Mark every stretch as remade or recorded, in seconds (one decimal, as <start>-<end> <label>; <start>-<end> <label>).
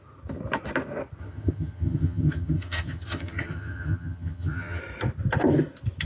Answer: 0.0-1.2 recorded; 1.2-4.8 remade; 4.8-6.0 recorded